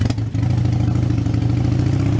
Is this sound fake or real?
real